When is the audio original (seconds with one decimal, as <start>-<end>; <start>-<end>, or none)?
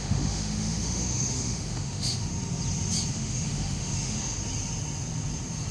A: 2.3-3.1; 4.4-5.7